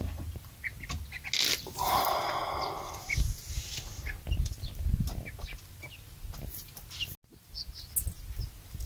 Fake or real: real